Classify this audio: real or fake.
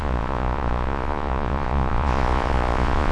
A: fake